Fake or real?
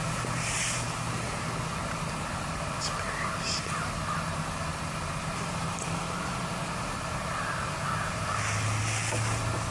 real